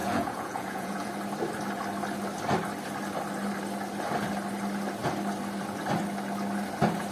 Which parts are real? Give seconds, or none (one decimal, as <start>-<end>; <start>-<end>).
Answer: 1.1-7.1